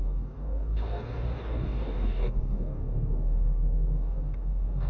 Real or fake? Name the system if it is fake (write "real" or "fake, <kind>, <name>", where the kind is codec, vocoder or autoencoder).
fake, codec, DAC